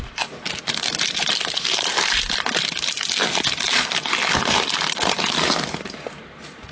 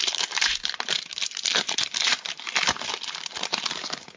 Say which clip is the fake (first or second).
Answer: second